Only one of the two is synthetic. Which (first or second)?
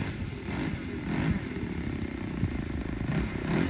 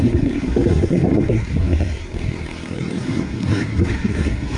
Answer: second